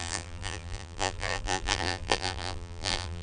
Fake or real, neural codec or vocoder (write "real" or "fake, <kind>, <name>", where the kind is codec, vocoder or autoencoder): fake, vocoder, BigVGAN v2